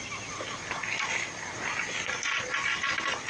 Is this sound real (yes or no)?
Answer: yes